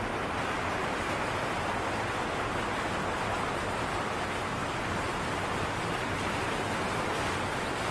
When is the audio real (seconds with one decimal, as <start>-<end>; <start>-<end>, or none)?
0.0-7.9